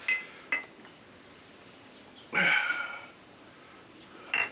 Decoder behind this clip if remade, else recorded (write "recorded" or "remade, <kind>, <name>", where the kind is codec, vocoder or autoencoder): recorded